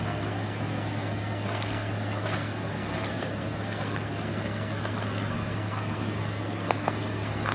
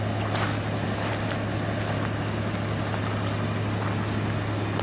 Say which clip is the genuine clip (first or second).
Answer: second